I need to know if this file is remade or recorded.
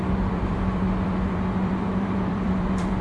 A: remade